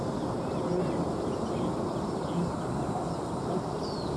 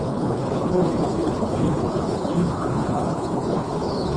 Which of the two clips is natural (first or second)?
first